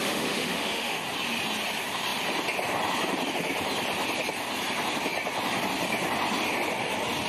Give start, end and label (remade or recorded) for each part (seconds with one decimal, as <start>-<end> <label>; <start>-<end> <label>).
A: 0.0-1.0 remade; 1.0-7.3 recorded